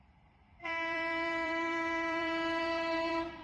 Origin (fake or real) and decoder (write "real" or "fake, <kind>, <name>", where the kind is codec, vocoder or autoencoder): fake, vocoder, BigVGAN v2